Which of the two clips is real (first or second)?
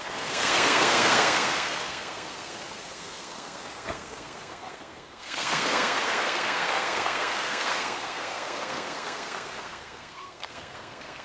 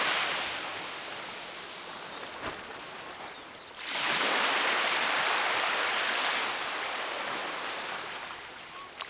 second